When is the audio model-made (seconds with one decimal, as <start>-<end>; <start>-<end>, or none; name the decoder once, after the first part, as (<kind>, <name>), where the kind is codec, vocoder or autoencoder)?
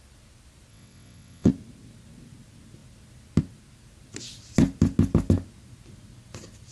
0.7-1.5 (vocoder, WaveNeXt)